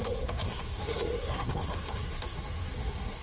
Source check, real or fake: fake